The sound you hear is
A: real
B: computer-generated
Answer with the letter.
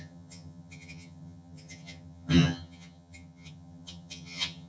B